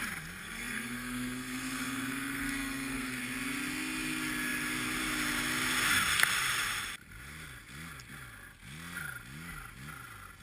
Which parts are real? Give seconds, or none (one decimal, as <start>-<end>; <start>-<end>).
0.0-0.4; 3.2-10.4

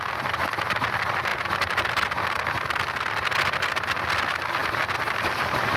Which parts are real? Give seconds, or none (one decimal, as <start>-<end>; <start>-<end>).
0.0-5.8